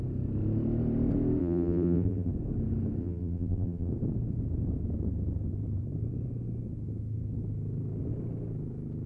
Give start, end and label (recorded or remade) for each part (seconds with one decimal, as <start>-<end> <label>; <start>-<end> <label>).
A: 0.0-1.4 recorded; 1.4-2.3 remade; 2.3-3.0 recorded; 3.0-3.9 remade; 3.9-9.1 recorded